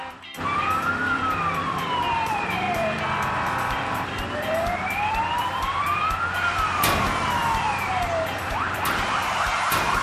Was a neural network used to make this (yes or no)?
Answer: yes